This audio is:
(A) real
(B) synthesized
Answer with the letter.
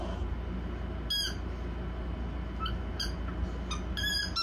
A